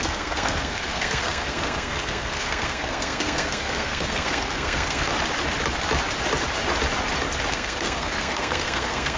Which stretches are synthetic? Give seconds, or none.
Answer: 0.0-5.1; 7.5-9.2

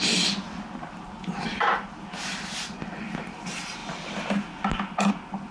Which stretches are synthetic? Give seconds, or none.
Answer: 1.5-2.4

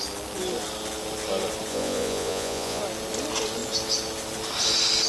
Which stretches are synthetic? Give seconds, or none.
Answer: 1.7-2.8

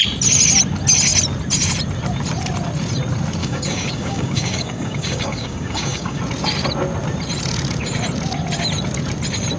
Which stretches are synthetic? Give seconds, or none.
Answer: 3.4-6.2

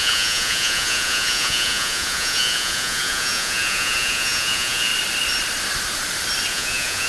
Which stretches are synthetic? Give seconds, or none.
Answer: 0.0-4.9; 6.5-7.1